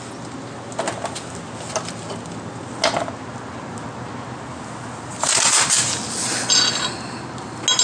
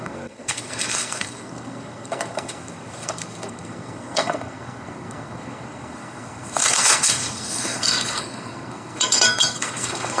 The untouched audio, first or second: first